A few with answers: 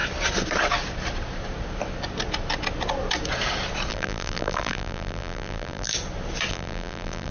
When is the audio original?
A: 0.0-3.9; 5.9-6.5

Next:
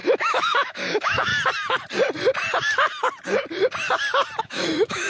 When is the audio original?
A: 1.3-4.4

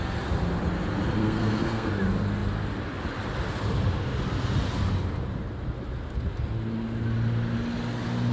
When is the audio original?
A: 0.0-1.2; 1.9-8.3

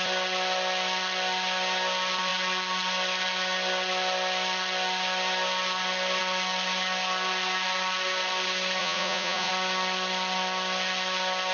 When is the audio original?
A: 0.0-8.8; 9.5-11.5

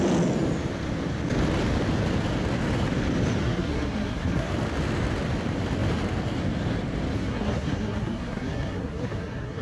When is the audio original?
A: 0.0-3.4; 4.5-7.1